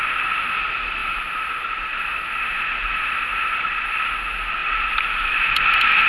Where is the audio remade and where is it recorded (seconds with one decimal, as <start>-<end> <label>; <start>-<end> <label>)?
0.0-1.0 recorded; 1.0-2.7 remade; 2.7-4.6 recorded; 4.6-5.5 remade; 5.5-6.1 recorded